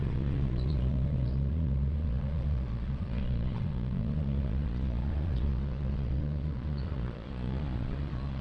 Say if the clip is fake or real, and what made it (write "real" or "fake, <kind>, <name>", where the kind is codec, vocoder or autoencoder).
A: fake, vocoder, Vocos